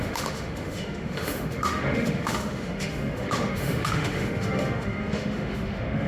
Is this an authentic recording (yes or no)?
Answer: no